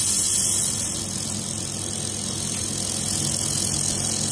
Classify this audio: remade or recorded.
recorded